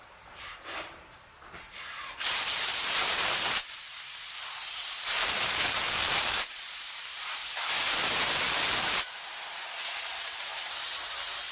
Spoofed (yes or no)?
yes